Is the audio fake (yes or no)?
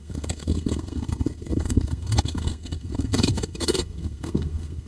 yes